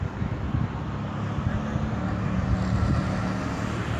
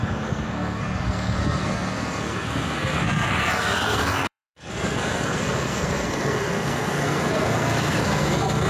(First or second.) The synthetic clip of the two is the second